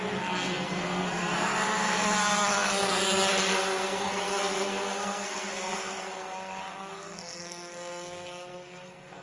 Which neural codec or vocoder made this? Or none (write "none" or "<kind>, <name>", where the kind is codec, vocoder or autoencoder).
codec, SNAC